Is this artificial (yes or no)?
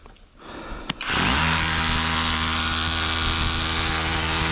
no